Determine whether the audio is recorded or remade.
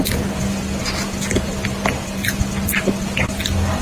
recorded